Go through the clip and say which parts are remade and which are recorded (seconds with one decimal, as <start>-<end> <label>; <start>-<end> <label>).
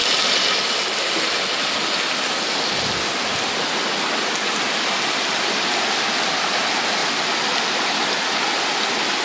0.0-9.2 recorded